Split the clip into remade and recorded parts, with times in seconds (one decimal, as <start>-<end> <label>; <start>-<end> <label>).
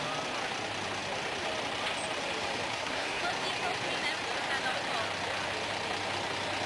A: 0.0-2.7 recorded; 2.7-3.2 remade; 3.2-6.7 recorded